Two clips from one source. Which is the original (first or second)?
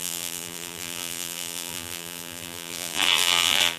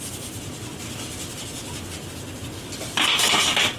second